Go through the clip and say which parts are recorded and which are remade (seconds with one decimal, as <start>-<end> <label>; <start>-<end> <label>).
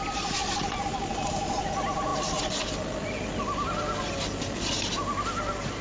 0.0-5.8 recorded